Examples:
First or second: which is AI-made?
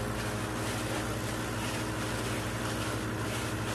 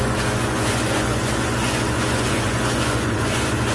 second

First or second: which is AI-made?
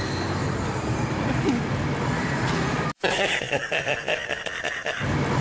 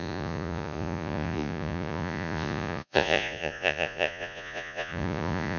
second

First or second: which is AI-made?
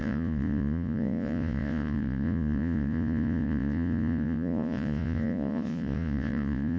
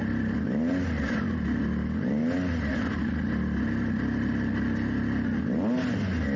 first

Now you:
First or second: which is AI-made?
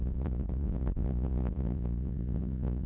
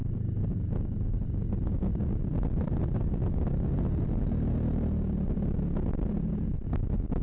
first